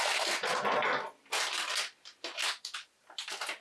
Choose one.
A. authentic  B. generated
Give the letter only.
A